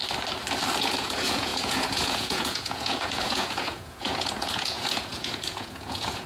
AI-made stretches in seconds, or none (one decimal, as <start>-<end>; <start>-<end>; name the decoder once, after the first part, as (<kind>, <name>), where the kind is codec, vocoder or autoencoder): 0.8-6.3 (vocoder, Vocos)